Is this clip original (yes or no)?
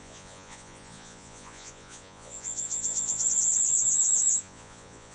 no